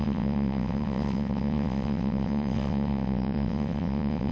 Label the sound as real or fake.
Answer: fake